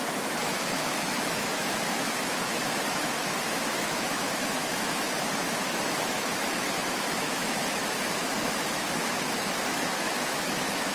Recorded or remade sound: remade